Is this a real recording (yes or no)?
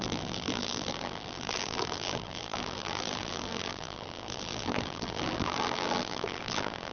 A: no